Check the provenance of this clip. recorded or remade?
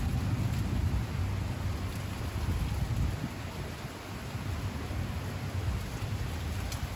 recorded